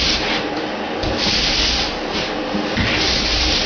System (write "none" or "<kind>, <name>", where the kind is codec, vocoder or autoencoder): none